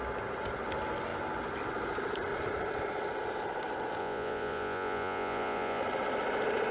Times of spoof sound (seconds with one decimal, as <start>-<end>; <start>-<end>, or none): 4.0-5.8